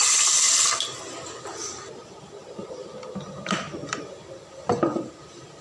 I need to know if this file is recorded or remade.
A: recorded